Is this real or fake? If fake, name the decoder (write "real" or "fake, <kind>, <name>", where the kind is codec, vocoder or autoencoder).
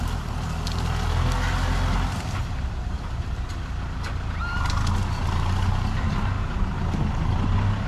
real